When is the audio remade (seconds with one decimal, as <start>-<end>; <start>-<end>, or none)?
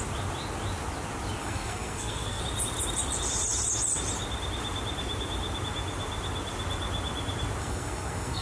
1.4-2.4; 7.6-8.4